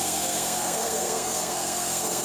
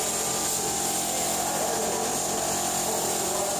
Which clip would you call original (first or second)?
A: second